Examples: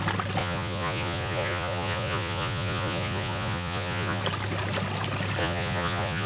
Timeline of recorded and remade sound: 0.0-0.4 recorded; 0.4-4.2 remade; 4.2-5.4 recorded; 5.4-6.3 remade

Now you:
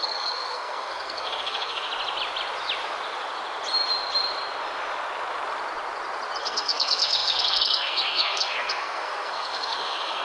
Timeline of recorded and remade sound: 0.0-1.9 remade; 1.9-6.4 recorded; 6.4-10.2 remade

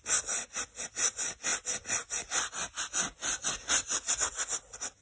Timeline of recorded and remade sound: 0.0-5.0 recorded

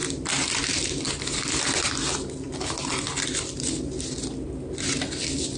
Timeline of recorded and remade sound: 0.0-5.6 recorded

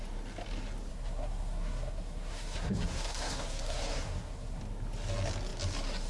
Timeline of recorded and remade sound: 0.0-0.9 recorded; 0.9-4.6 remade; 4.6-6.1 recorded

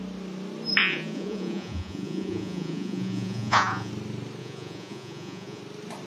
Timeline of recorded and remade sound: 0.0-0.8 recorded; 0.8-3.9 remade; 3.9-4.4 recorded; 4.4-5.6 remade; 5.6-6.1 recorded